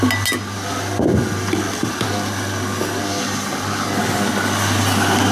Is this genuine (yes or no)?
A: yes